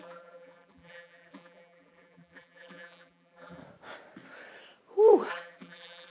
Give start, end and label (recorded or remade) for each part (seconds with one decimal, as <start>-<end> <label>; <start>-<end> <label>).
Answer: 0.0-3.6 remade; 3.6-5.3 recorded; 5.3-6.1 remade